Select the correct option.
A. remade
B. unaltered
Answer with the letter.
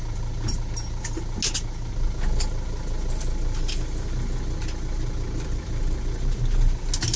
B